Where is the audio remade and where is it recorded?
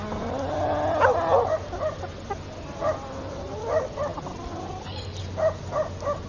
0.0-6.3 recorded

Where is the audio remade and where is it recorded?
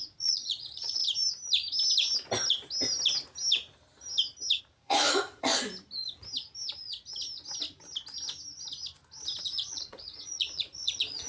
0.0-1.0 remade; 1.0-4.6 recorded; 4.6-5.5 remade; 5.5-9.4 recorded; 9.4-11.3 remade